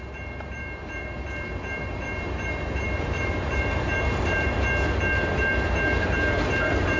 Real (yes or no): no